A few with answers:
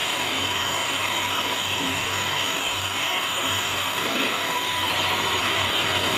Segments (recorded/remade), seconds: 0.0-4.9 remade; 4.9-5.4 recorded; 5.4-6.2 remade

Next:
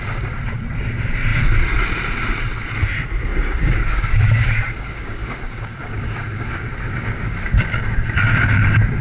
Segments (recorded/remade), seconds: 0.0-3.3 recorded; 3.3-8.5 remade; 8.5-9.0 recorded

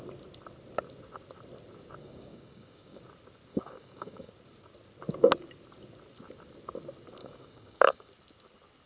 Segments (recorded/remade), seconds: 0.0-2.0 recorded; 2.0-3.0 remade; 3.0-3.5 recorded; 3.5-4.3 remade; 4.3-7.2 recorded; 7.2-8.1 remade; 8.1-8.9 recorded

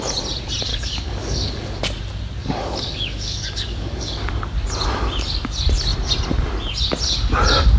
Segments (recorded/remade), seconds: 0.0-0.7 recorded; 0.7-1.8 remade; 1.8-2.4 recorded; 2.4-4.3 remade; 4.3-7.8 recorded

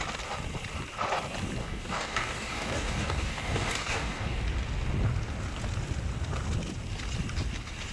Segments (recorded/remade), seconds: 0.0-1.6 recorded; 1.6-4.4 remade; 4.4-7.9 recorded

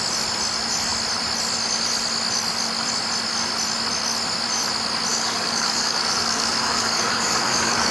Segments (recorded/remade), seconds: 0.0-5.1 recorded; 5.1-7.9 remade

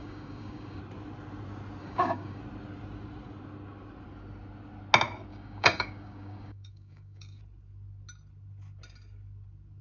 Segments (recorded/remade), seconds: 0.0-0.8 remade; 0.8-1.8 recorded; 1.8-2.4 remade; 2.4-5.3 recorded; 5.3-7.4 remade; 7.4-9.8 recorded